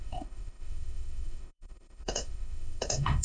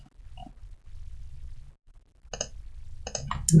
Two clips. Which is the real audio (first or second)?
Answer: second